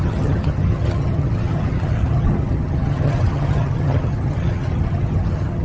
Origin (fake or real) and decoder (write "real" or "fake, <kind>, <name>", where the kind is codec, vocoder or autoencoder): fake, vocoder, HiFi-GAN